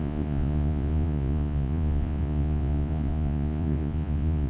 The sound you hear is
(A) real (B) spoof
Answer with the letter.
B